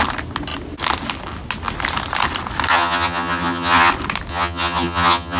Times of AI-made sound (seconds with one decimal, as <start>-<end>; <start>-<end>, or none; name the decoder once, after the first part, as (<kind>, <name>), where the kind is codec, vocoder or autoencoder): 2.7-3.9 (vocoder, HiFi-GAN); 4.3-5.4